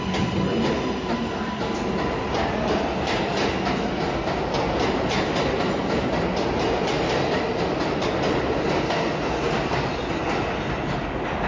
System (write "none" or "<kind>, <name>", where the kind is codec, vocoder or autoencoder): none